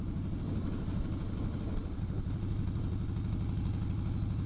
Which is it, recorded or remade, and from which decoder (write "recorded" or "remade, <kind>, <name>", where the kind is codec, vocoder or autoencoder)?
recorded